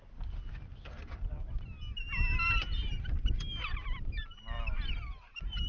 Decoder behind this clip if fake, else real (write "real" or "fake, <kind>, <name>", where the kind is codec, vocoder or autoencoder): real